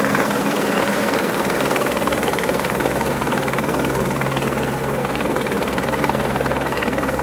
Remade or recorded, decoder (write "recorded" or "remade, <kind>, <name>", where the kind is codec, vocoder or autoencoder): remade, codec, SNAC